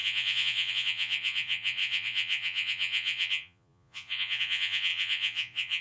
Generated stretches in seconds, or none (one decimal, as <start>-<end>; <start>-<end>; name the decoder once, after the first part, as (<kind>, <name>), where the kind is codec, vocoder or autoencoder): 0.0-5.8 (vocoder, Vocos)